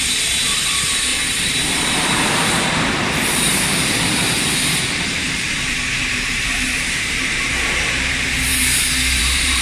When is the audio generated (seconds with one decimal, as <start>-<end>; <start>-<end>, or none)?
0.0-8.5; 9.2-9.6